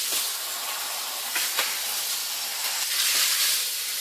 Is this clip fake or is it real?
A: real